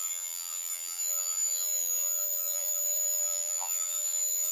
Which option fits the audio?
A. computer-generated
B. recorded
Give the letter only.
A